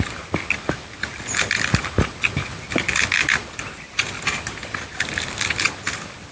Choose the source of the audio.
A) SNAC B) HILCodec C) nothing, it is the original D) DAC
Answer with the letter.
C